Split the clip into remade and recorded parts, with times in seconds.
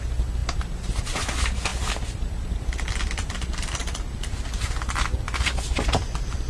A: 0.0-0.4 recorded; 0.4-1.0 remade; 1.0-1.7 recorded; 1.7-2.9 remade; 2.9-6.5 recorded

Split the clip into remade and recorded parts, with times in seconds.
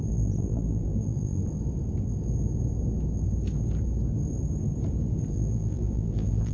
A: 0.0-1.4 remade; 1.4-5.3 recorded; 5.3-6.5 remade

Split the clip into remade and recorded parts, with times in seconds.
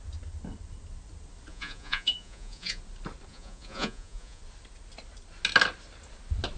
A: 0.0-1.5 recorded; 1.5-2.8 remade; 2.8-3.3 recorded; 3.3-4.4 remade; 4.4-6.6 recorded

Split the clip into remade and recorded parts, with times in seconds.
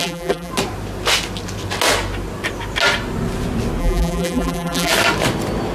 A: 0.0-0.5 remade; 0.5-3.8 recorded; 3.8-4.9 remade; 4.9-5.7 recorded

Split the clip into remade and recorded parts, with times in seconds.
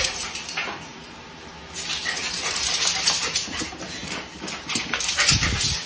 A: 0.0-0.9 recorded; 0.9-1.5 remade; 1.5-2.2 recorded; 2.2-2.7 remade; 2.7-5.9 recorded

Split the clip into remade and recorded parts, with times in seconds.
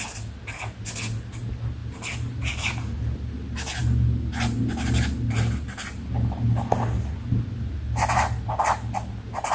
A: 0.0-9.5 recorded